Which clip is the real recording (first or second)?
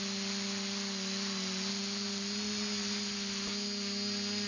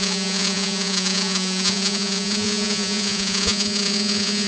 first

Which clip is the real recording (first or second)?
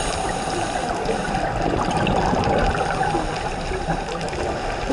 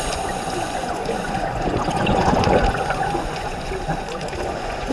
first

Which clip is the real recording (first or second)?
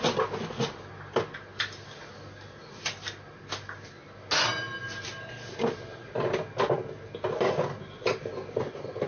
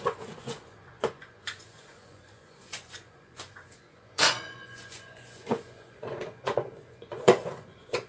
first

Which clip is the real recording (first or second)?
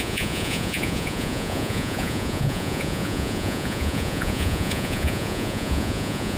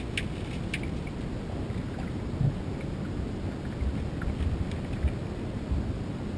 second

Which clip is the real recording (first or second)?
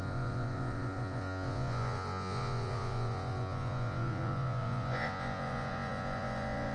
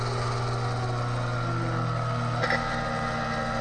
second